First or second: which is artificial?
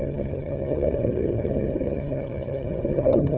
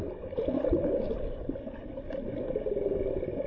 first